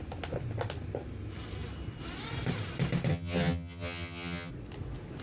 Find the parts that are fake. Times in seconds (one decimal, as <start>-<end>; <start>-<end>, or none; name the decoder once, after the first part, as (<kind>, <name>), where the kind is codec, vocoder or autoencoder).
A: 3.1-4.5 (vocoder, HiFi-GAN)